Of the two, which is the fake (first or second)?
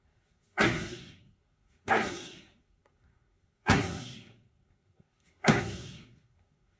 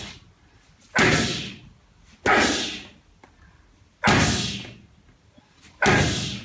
first